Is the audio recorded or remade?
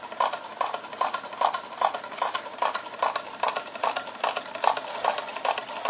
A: recorded